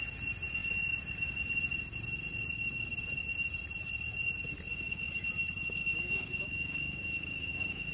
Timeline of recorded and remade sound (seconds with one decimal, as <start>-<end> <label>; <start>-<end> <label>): 0.0-4.7 recorded; 4.7-5.3 remade; 5.3-5.8 recorded; 5.8-7.9 remade